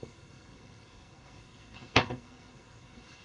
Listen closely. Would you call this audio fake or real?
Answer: fake